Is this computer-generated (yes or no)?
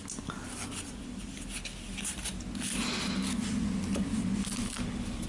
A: no